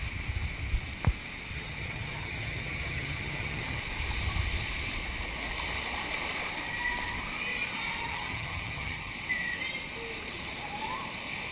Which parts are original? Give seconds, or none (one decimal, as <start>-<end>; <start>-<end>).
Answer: 0.0-1.5; 3.8-8.0; 9.1-11.5